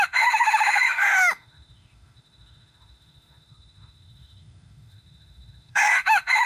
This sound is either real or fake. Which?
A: fake